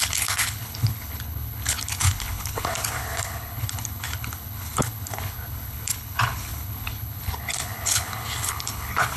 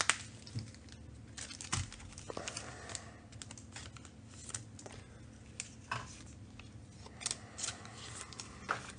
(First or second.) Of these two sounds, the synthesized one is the first